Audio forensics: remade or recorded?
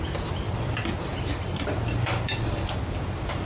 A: recorded